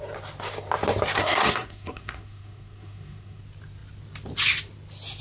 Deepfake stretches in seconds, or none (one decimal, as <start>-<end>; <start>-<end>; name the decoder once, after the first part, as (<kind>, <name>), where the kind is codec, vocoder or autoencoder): 1.2-3.4 (codec, SNAC)